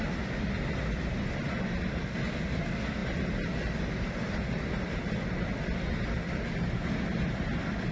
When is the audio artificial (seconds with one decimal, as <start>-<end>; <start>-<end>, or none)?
none